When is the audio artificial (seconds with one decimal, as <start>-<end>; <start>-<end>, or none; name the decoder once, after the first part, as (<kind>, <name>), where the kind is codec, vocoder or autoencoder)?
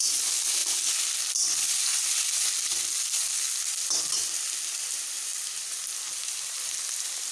none